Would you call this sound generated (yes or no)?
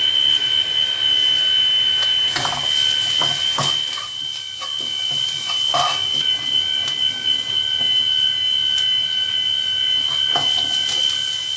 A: no